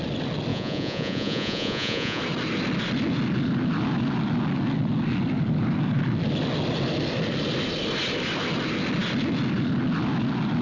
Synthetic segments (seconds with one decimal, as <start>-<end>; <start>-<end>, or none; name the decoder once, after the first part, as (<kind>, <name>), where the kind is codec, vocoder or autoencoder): 0.5-2.2 (vocoder, Vocos)